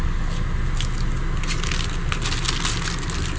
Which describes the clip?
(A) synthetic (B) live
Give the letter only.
B